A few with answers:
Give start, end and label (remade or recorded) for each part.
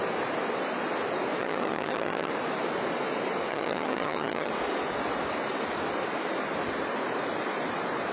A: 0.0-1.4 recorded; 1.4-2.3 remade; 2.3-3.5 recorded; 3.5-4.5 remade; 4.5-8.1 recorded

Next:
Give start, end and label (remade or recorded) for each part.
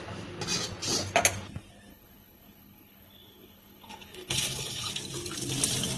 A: 0.0-1.9 recorded; 1.9-4.9 remade; 4.9-6.0 recorded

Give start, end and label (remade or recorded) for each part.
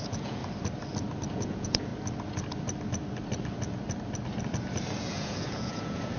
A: 0.0-0.4 remade; 0.4-1.3 recorded; 1.3-1.9 remade; 1.9-5.0 recorded; 5.0-6.2 remade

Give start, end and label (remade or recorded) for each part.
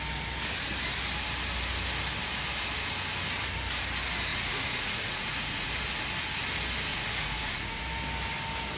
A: 0.0-4.3 recorded; 4.3-5.7 remade; 5.7-6.9 recorded; 6.9-7.8 remade; 7.8-8.8 recorded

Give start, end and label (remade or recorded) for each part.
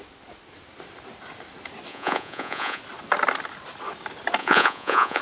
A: 0.0-1.9 recorded; 1.9-2.8 remade; 2.8-4.4 recorded; 4.4-5.2 remade